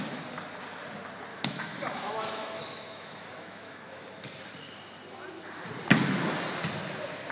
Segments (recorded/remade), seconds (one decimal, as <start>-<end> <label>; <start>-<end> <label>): 0.0-1.3 recorded; 1.3-4.0 remade; 4.0-7.3 recorded